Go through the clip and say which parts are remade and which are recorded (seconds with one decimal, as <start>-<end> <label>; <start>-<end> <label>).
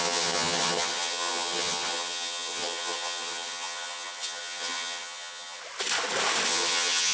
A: 0.0-5.6 remade; 5.6-6.5 recorded; 6.5-7.1 remade